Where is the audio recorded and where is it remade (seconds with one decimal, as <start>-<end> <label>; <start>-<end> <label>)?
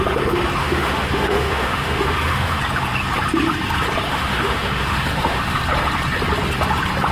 0.0-0.6 recorded; 0.6-2.6 remade; 2.6-4.1 recorded; 4.1-5.6 remade; 5.6-7.1 recorded